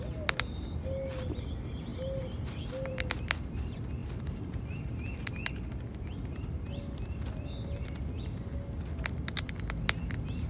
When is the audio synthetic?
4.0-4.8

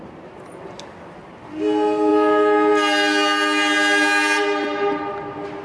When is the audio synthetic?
none

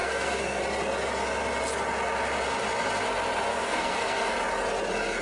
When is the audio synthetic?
0.0-0.6; 3.5-4.3

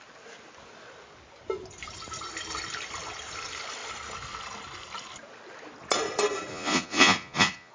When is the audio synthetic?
6.5-7.7

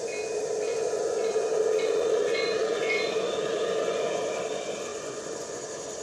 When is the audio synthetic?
0.7-4.3; 4.9-5.6

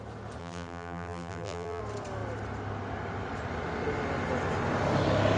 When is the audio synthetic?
0.4-1.8

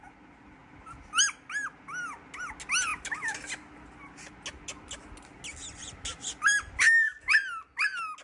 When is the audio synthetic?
none

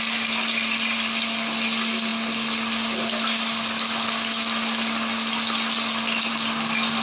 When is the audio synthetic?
none